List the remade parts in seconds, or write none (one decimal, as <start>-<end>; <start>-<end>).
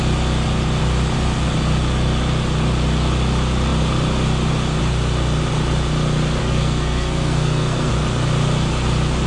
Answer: 6.4-7.9